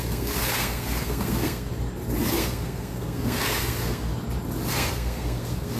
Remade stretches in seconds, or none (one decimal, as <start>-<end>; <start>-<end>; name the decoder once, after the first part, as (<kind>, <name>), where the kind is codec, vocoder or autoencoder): 0.0-1.7 (codec, SNAC); 2.2-4.1; 4.7-5.8